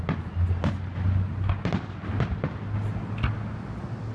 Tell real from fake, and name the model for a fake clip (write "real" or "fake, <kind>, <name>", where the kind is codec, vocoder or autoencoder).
real